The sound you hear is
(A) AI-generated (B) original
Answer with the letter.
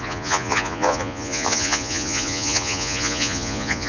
A